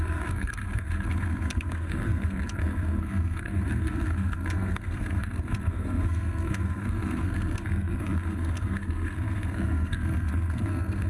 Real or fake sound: fake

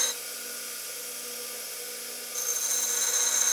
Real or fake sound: real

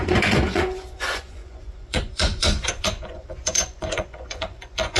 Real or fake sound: fake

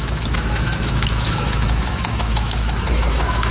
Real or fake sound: fake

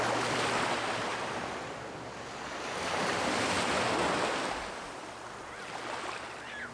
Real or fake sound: real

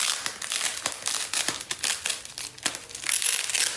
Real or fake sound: real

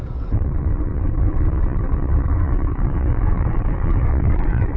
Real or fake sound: fake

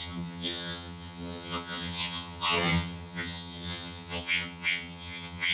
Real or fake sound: fake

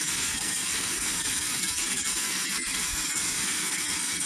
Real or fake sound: fake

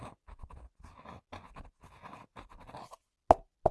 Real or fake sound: real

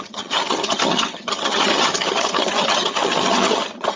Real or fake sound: fake